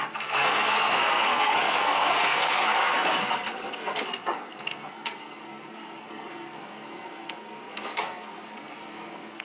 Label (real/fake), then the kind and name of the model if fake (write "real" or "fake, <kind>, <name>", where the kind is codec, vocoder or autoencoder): fake, codec, SNAC